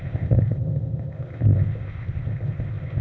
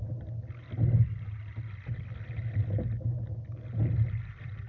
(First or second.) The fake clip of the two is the first